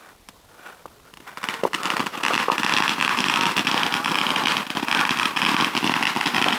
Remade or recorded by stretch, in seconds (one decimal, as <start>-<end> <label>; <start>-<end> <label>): 0.0-6.6 recorded